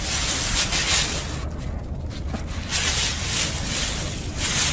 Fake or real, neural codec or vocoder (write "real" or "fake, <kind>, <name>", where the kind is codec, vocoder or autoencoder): real